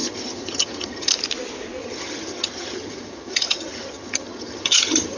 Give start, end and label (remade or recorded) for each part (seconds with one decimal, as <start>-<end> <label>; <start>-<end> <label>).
0.0-1.1 remade; 1.1-1.8 recorded; 1.8-5.2 remade